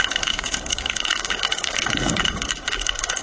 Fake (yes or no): yes